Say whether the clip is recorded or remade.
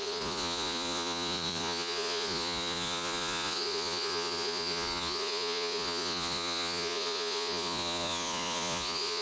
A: remade